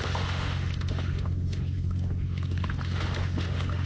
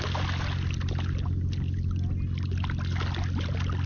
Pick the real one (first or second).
second